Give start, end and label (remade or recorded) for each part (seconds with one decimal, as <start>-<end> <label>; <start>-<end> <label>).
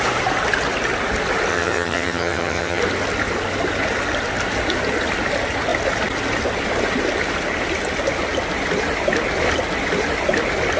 0.0-1.5 recorded; 1.5-2.8 remade; 2.8-10.8 recorded